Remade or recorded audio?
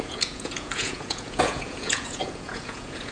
remade